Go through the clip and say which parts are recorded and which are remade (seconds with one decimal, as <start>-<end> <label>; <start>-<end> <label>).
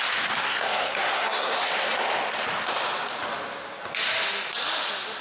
0.0-0.4 recorded; 0.4-1.7 remade; 1.7-5.2 recorded